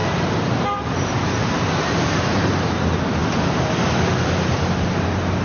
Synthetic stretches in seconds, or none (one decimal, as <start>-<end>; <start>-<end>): 0.0-3.2; 4.5-5.4